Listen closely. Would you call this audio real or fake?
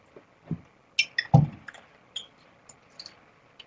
real